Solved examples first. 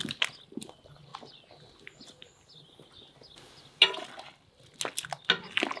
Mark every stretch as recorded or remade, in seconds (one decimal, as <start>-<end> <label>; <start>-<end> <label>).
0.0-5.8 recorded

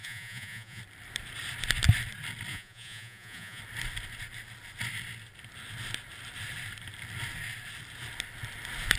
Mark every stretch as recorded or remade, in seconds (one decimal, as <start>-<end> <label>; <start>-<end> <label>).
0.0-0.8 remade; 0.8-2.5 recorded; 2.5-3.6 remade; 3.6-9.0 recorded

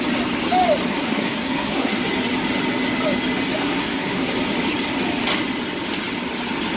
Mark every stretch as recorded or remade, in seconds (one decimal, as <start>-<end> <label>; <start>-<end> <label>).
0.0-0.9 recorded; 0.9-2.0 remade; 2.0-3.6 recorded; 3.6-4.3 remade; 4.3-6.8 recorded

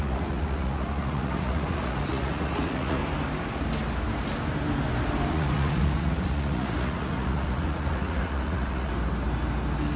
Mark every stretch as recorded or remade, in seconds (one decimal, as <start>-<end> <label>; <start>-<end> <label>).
0.0-3.0 remade; 3.0-5.3 recorded; 5.3-8.9 remade; 8.9-10.0 recorded